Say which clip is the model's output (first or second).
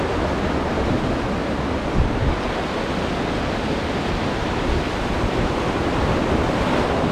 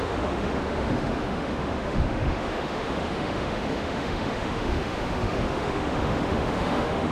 second